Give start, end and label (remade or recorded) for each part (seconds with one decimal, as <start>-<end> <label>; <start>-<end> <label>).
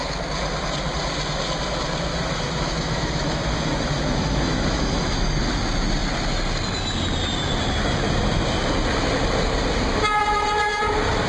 0.0-2.1 recorded; 2.1-5.4 remade; 5.4-11.3 recorded